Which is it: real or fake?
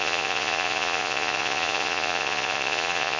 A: fake